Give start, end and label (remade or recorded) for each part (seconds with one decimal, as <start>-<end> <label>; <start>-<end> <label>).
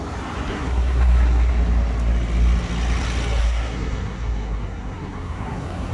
0.0-0.5 recorded; 0.5-1.5 remade; 1.5-3.4 recorded; 3.4-5.9 remade